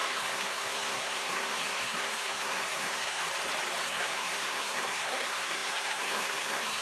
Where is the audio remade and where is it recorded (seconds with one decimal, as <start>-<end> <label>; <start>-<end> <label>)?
0.0-3.2 remade; 3.2-3.8 recorded; 3.8-6.8 remade